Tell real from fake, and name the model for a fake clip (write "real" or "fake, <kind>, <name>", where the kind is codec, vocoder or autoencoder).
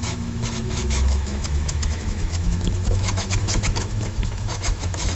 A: fake, autoencoder, DAC-VAE